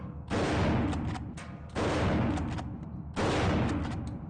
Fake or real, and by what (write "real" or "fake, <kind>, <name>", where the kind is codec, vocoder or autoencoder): real